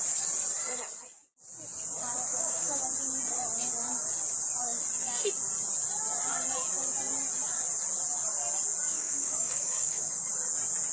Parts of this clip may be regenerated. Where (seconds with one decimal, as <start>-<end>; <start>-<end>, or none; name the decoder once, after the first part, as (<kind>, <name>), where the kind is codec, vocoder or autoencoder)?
2.3-2.8 (codec, DAC); 8.9-10.3